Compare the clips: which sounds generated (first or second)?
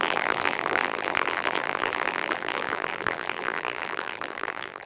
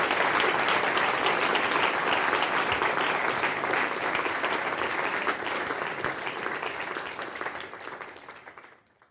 first